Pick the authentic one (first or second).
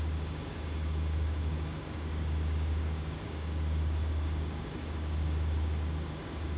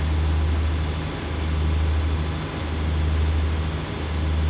second